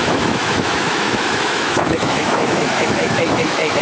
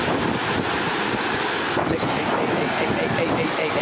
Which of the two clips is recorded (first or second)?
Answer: second